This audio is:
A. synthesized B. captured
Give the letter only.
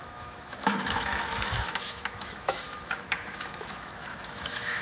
A